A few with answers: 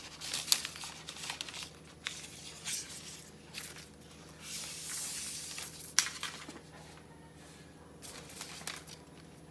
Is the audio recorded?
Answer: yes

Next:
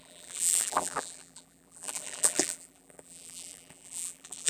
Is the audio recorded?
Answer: no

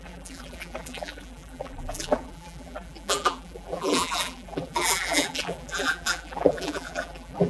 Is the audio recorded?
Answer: no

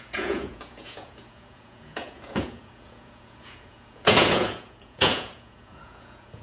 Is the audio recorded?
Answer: no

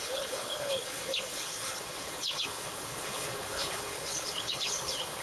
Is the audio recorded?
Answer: no